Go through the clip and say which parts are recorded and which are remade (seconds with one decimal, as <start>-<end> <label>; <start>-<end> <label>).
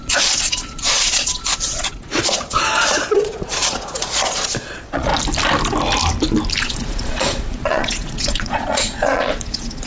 0.0-5.1 remade; 5.1-6.6 recorded; 6.6-9.9 remade